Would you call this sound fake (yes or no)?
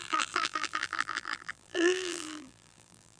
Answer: yes